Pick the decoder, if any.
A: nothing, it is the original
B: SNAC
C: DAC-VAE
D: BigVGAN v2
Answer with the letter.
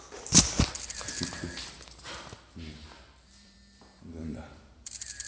D